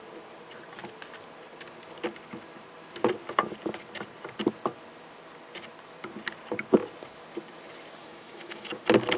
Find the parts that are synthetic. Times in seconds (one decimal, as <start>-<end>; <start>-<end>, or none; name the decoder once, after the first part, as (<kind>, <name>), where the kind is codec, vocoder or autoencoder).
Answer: 8.0-8.7 (autoencoder, DAC-VAE)